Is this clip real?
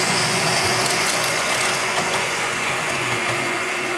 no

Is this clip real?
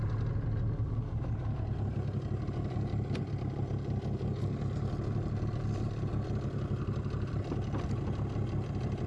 yes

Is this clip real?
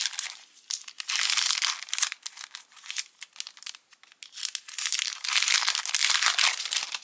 yes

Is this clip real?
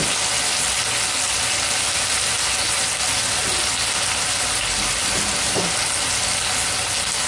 yes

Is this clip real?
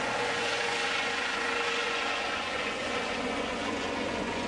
no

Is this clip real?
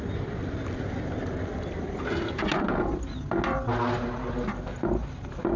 yes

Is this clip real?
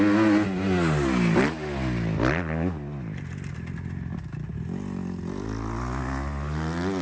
yes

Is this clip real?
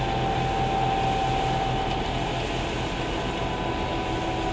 yes